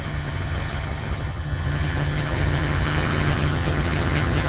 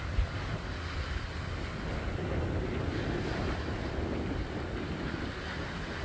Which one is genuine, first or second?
second